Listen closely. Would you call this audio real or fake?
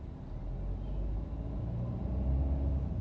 real